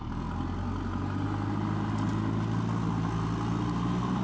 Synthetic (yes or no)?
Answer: no